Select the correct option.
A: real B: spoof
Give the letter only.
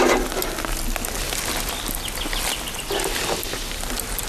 A